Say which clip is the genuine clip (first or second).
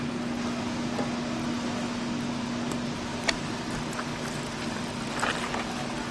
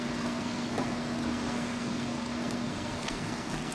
first